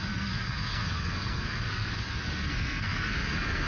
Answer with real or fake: fake